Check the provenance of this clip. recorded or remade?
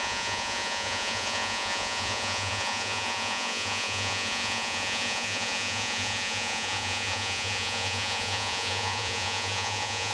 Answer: remade